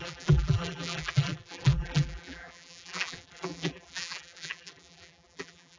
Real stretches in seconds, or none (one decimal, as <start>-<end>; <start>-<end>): none